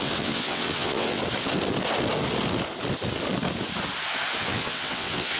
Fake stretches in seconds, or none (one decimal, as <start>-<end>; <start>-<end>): 0.0-1.2; 4.4-5.4